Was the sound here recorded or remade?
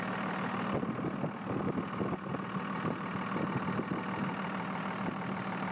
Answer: recorded